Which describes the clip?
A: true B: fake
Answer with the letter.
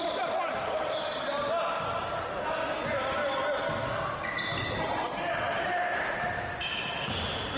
A